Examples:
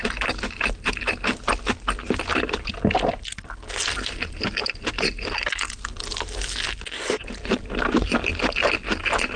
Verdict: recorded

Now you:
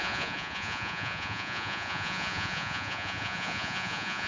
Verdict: remade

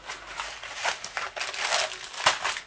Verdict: recorded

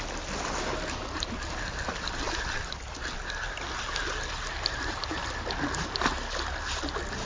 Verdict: recorded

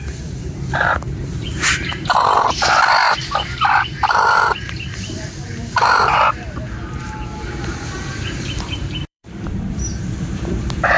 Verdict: remade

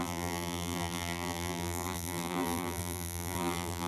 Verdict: remade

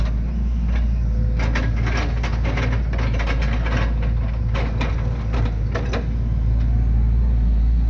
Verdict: recorded